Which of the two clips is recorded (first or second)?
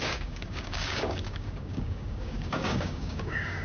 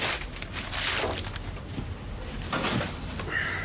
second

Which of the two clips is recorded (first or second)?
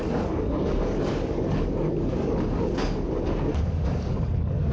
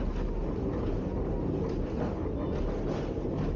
second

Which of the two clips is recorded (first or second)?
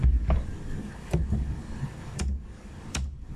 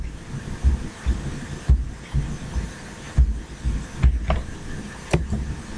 second